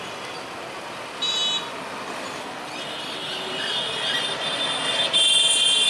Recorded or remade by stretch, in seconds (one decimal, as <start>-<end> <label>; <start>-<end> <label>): 0.0-5.9 recorded